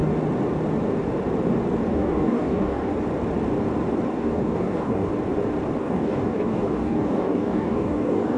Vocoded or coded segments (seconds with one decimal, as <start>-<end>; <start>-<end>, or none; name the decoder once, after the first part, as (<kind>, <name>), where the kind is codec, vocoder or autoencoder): 1.9-2.9 (codec, DAC); 4.1-5.1; 5.8-8.4